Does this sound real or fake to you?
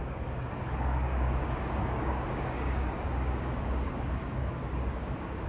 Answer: fake